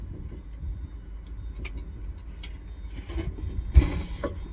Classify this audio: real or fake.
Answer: real